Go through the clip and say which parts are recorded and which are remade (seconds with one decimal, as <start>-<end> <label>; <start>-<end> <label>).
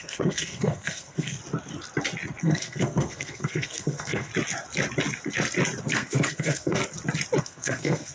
0.0-1.4 remade; 1.4-2.4 recorded; 2.4-4.3 remade; 4.3-5.9 recorded; 5.9-6.8 remade; 6.8-7.4 recorded; 7.4-8.1 remade